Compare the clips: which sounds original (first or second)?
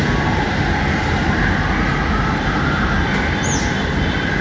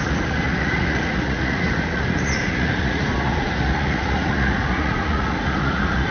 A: first